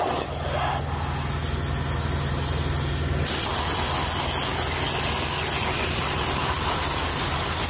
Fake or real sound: real